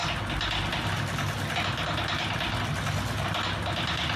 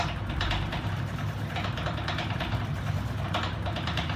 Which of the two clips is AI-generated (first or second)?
second